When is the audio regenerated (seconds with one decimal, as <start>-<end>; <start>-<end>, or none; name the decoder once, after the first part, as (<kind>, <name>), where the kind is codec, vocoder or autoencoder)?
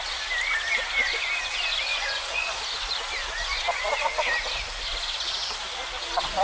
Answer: 1.9-2.6 (vocoder, Vocos); 3.2-4.1